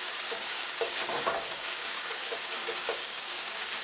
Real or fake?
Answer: fake